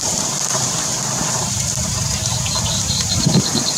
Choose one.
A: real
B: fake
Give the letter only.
B